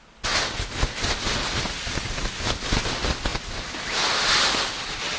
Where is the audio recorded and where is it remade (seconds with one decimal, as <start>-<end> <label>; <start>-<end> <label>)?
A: 0.0-5.2 recorded